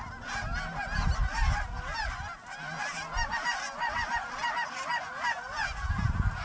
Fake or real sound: real